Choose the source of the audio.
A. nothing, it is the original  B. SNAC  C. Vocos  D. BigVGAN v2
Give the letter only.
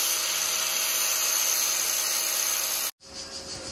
A